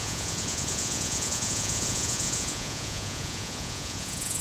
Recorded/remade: remade